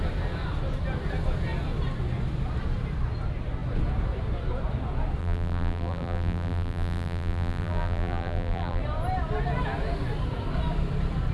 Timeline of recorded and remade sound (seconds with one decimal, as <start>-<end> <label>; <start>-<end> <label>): 0.0-5.2 recorded; 5.2-8.8 remade; 8.8-11.3 recorded